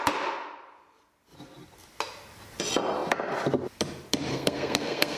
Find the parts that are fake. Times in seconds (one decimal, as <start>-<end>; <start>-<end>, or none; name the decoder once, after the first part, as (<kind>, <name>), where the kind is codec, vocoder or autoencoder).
4.3-5.2 (codec, SNAC)